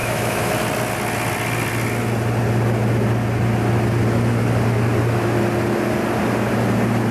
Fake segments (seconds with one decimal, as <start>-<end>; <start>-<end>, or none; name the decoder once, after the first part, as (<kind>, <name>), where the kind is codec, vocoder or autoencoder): 0.0-0.5 (autoencoder, DAC-VAE)